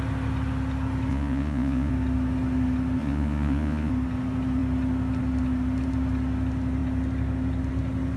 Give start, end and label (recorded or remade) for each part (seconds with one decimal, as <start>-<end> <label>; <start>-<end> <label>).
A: 0.0-1.1 recorded; 1.1-1.9 remade; 1.9-3.0 recorded; 3.0-3.9 remade; 3.9-8.2 recorded